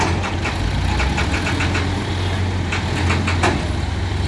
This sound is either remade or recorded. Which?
recorded